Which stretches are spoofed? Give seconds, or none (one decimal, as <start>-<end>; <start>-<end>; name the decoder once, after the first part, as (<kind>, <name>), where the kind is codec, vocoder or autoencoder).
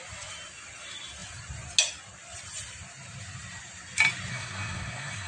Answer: 4.3-5.3 (codec, SNAC)